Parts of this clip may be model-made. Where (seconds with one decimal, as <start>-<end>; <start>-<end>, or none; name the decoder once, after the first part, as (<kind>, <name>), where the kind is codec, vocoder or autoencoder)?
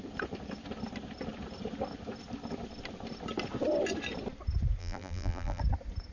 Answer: 4.8-5.6 (vocoder, BigVGAN v2)